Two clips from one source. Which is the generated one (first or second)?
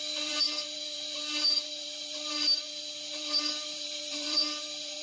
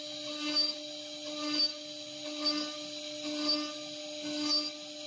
first